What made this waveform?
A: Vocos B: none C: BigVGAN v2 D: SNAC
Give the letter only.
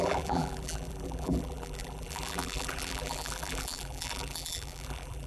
C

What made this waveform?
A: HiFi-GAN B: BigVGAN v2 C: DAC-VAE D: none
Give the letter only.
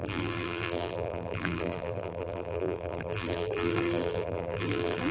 B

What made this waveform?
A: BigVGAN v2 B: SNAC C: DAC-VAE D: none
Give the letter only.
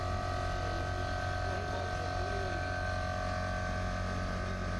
D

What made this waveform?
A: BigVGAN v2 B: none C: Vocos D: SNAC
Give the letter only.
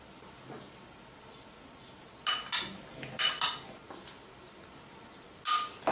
B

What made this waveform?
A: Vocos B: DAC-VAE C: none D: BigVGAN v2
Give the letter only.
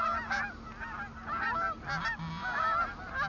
C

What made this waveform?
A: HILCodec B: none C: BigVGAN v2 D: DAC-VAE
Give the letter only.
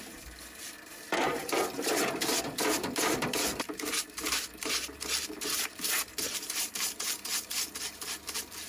C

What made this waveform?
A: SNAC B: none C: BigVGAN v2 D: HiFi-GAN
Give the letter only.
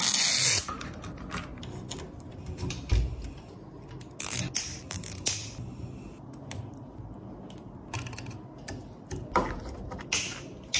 B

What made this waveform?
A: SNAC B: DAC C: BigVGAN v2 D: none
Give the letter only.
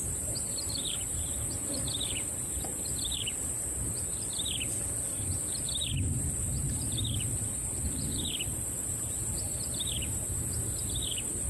C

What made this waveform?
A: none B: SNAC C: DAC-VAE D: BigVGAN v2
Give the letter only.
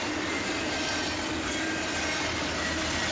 A